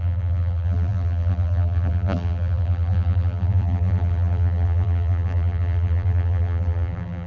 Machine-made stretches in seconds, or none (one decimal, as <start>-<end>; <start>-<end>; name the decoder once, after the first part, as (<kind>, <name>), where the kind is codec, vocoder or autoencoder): 0.0-7.3 (vocoder, BigVGAN v2)